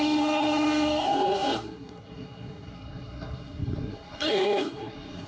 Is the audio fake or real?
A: fake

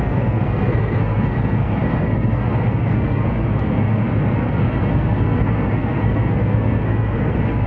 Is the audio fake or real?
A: fake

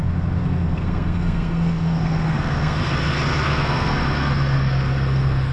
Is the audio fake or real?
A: fake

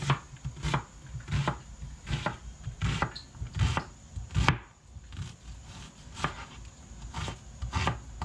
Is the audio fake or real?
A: real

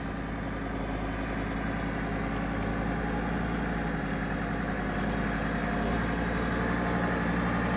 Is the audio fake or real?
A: real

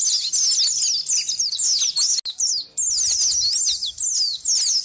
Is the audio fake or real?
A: real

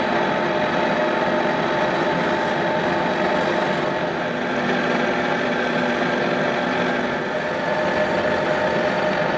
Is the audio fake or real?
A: real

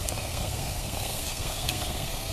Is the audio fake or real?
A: fake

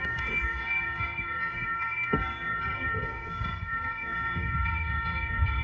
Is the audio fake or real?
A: fake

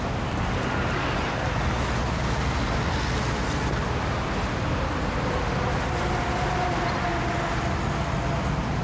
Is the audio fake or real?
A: real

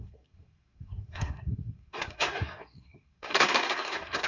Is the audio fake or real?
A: fake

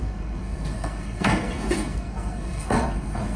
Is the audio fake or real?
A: fake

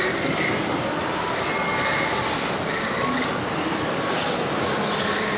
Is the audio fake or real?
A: real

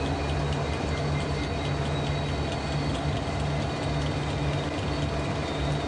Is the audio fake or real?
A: real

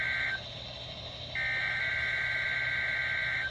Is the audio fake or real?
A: real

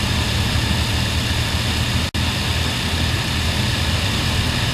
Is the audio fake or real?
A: real